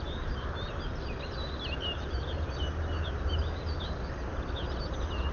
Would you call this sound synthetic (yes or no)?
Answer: no